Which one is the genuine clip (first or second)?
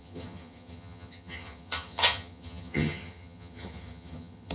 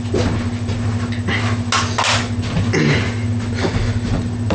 second